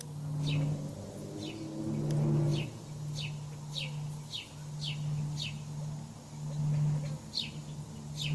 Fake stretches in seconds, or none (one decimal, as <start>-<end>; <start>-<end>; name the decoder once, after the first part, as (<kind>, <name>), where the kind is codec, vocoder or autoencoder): none